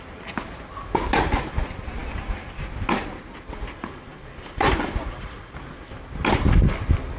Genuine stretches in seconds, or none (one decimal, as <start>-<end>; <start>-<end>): 0.0-2.0; 2.6-4.1; 5.6-7.2